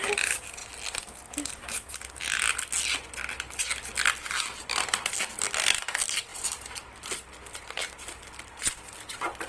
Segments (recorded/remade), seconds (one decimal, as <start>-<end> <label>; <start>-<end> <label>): 0.0-9.5 recorded